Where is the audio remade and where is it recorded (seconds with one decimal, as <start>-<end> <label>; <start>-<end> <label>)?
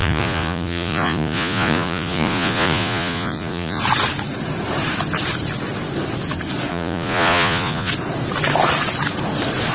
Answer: 0.0-3.8 remade; 3.8-6.7 recorded; 6.7-7.9 remade; 7.9-9.7 recorded